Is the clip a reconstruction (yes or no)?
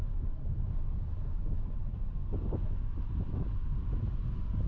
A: no